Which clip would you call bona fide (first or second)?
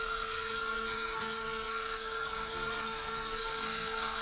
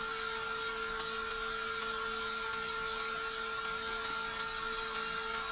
second